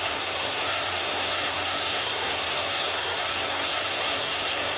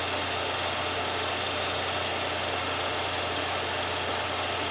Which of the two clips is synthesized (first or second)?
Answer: first